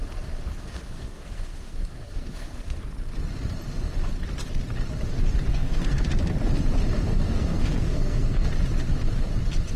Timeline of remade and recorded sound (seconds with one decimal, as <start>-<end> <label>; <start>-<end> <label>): 0.0-0.5 recorded; 0.5-2.8 remade; 2.8-5.5 recorded; 5.5-6.0 remade; 6.0-7.1 recorded; 7.1-8.5 remade; 8.5-9.8 recorded